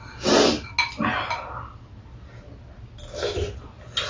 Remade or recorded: recorded